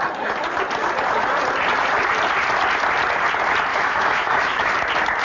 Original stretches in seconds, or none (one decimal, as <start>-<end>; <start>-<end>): 0.0-3.7; 4.7-5.2